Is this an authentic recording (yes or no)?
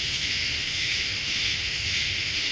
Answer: no